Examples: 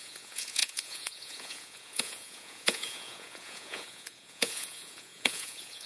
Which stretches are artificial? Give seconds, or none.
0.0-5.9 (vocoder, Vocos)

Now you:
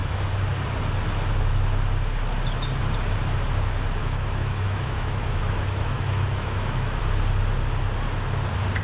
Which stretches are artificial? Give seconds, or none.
4.0-7.0 (autoencoder, DAC-VAE)

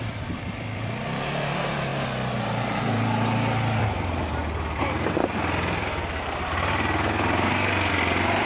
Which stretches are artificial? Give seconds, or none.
0.0-1.9 (vocoder, BigVGAN v2); 3.8-4.4; 7.9-8.4